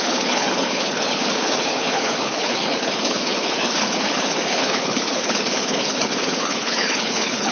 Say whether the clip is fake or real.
fake